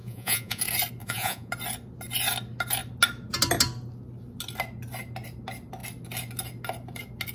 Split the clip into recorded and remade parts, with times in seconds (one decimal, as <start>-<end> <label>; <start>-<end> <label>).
0.0-0.6 remade; 0.6-1.0 recorded; 1.0-1.5 remade; 1.5-7.3 recorded